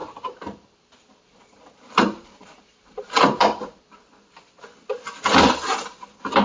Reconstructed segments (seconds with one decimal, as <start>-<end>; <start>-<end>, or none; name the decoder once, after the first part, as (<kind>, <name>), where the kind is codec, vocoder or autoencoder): 0.0-3.8 (vocoder, BigVGAN v2)